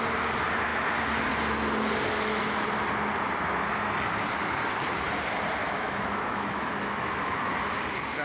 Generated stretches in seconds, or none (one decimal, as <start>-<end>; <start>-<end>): 5.6-7.7